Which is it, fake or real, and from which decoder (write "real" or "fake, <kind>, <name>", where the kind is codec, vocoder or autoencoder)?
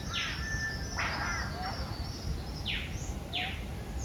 real